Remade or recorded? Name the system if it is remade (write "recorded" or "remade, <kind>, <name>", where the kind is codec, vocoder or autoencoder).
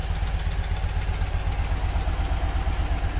recorded